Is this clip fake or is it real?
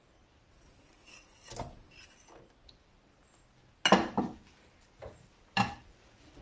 real